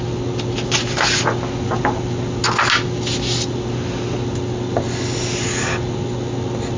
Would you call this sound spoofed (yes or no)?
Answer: no